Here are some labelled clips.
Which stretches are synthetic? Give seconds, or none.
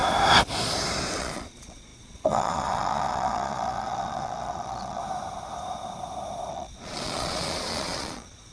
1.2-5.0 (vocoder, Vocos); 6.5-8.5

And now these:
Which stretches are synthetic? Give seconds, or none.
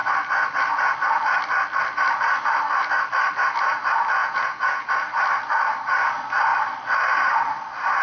4.2-4.9 (vocoder, Vocos)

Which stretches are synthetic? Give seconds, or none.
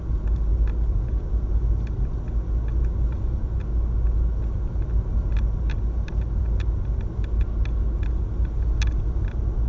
none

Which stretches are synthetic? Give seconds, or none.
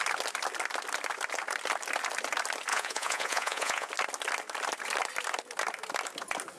2.7-3.9 (vocoder, Vocos)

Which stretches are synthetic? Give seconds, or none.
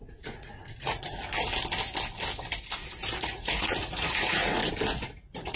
0.0-1.1 (vocoder, Vocos); 3.2-4.6; 5.1-5.6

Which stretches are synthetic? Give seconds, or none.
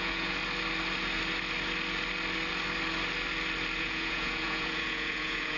0.0-0.4 (vocoder, Vocos); 3.8-5.6